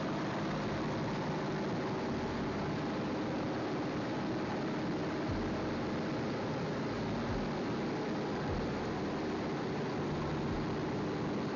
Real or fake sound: real